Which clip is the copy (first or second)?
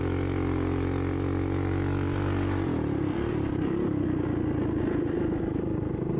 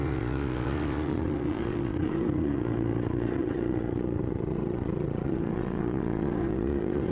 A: second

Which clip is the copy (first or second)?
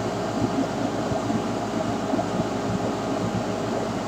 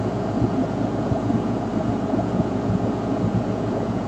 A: second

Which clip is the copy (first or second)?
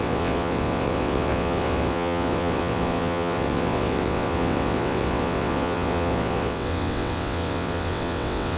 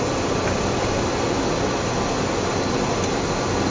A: first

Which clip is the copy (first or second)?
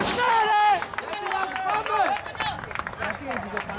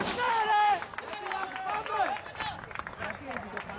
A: second